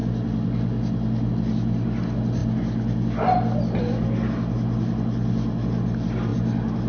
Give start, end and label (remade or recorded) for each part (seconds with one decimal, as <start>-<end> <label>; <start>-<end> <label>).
0.0-6.9 recorded